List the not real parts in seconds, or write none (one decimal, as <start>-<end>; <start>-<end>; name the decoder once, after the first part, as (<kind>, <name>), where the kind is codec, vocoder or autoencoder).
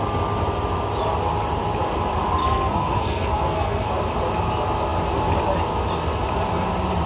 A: 2.4-3.9 (codec, SNAC)